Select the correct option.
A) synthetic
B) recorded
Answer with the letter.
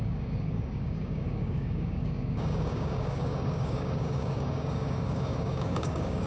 A